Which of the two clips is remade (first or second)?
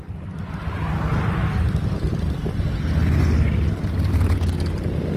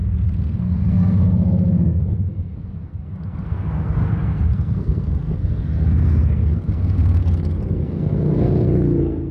second